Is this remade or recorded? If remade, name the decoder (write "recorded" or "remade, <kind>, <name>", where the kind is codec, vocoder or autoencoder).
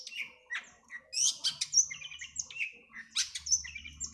recorded